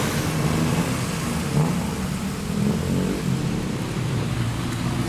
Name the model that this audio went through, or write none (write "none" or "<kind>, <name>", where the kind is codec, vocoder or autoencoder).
none